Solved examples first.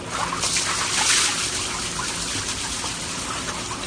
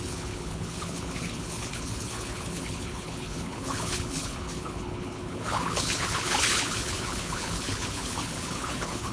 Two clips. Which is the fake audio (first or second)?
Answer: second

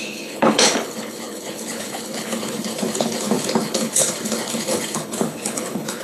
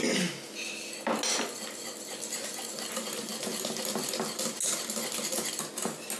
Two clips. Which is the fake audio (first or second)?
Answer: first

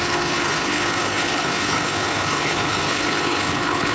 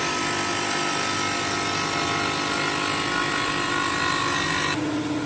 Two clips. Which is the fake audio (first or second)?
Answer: first